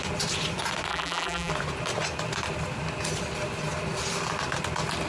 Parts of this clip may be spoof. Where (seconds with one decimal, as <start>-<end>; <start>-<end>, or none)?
0.9-1.5